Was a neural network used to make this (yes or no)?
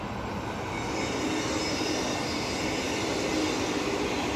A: no